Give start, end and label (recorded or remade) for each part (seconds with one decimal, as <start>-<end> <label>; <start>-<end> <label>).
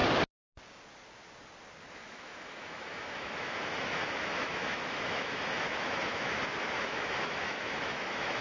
0.0-1.9 recorded; 1.9-8.4 remade